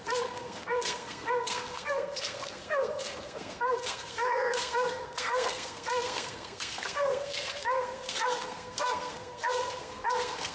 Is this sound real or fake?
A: fake